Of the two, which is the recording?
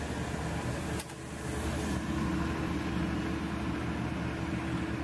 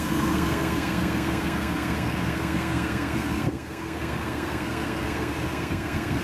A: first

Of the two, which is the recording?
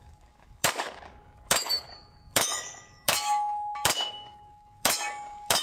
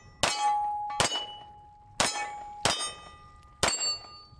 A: second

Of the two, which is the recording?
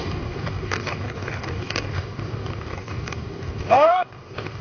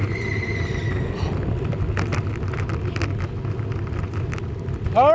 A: second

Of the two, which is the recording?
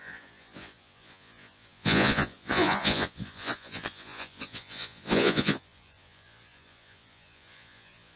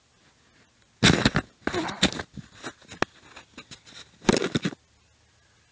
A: second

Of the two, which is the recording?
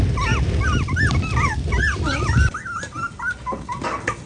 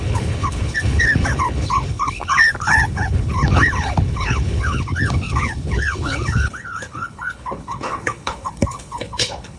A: first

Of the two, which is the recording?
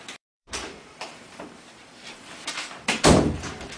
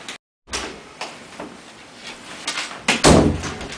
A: second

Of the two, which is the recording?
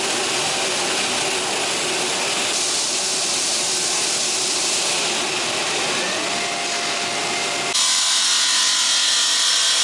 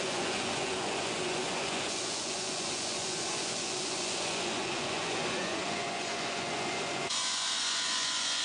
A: first